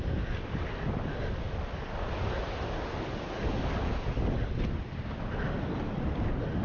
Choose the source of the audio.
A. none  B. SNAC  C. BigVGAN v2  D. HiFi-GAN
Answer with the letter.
A